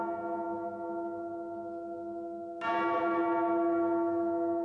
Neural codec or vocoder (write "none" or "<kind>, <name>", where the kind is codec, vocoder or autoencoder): none